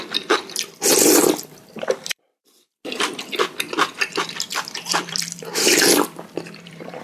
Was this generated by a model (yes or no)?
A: yes